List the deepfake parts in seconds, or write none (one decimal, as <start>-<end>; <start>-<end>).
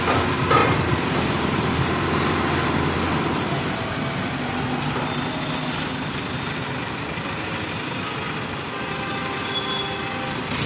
0.6-2.1